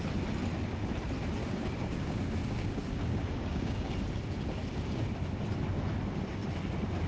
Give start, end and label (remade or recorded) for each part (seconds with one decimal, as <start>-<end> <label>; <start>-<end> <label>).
0.0-1.4 recorded; 1.4-3.9 remade; 3.9-4.6 recorded; 4.6-5.1 remade; 5.1-7.1 recorded